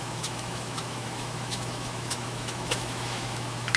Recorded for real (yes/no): no